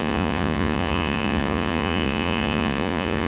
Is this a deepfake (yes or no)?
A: yes